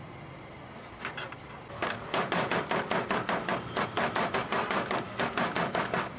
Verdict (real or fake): real